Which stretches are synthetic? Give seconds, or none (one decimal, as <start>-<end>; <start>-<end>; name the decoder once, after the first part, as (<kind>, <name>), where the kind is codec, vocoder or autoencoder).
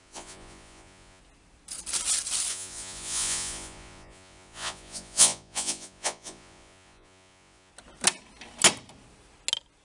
0.0-1.2 (vocoder, Vocos); 2.5-7.7